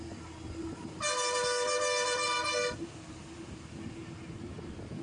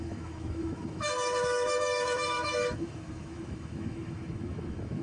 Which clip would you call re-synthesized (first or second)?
second